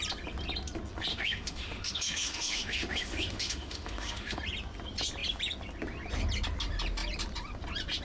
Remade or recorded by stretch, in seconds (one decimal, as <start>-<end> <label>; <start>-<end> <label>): 0.0-1.1 recorded; 1.1-4.4 remade; 4.4-8.0 recorded

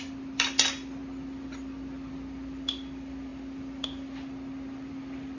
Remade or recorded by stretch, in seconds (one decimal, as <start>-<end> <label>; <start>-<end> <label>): 0.0-5.4 recorded

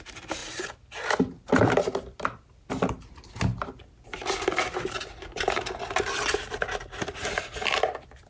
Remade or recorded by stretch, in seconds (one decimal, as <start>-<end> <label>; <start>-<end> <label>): 0.0-8.3 recorded

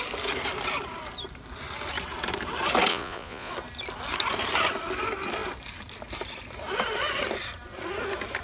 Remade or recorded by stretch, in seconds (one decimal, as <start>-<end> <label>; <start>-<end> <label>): 0.0-2.9 recorded; 2.9-3.5 remade; 3.5-8.4 recorded

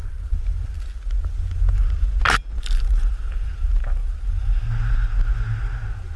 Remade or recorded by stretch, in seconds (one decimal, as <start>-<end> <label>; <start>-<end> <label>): 0.0-0.8 remade; 0.8-2.4 recorded; 2.4-3.5 remade; 3.5-6.2 recorded

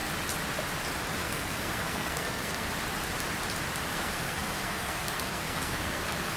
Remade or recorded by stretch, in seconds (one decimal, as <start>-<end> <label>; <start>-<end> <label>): 0.0-1.2 recorded; 1.2-2.7 remade; 2.7-3.9 recorded; 3.9-6.4 remade